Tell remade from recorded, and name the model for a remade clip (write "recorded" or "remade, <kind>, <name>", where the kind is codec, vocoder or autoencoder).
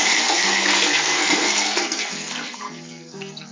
remade, codec, SNAC